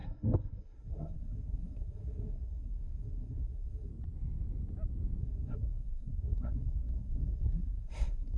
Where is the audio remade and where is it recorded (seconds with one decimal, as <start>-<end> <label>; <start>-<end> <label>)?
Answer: 0.0-3.9 remade; 3.9-5.2 recorded; 5.2-8.4 remade